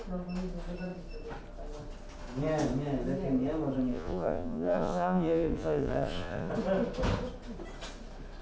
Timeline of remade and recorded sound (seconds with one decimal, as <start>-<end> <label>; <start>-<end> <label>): 0.0-3.9 recorded; 3.9-6.5 remade; 6.5-8.4 recorded